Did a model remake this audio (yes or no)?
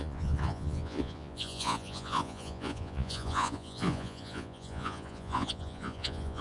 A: yes